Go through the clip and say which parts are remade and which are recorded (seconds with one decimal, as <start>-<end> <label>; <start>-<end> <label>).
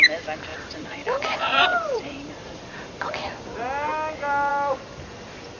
0.0-0.5 recorded; 0.5-3.3 remade; 3.3-5.6 recorded